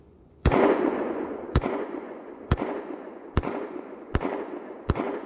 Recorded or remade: remade